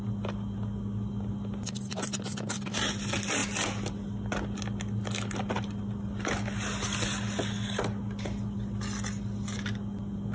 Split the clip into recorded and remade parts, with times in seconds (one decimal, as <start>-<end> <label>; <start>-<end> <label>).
0.0-10.3 recorded